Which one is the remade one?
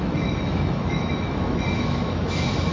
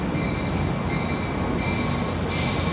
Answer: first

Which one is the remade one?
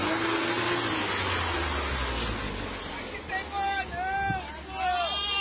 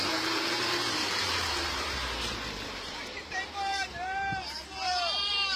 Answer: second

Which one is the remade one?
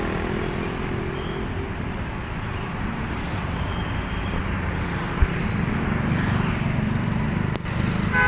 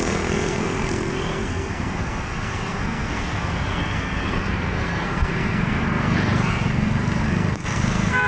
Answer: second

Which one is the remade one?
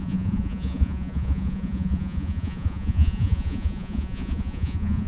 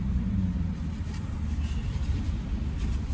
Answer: first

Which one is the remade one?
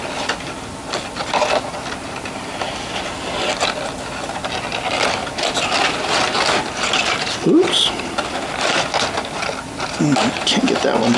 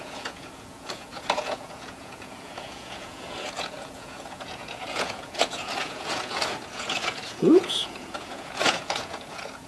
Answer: second